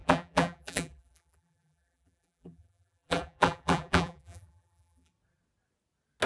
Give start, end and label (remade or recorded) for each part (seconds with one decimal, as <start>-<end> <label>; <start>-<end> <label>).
0.0-5.1 remade; 5.1-6.3 recorded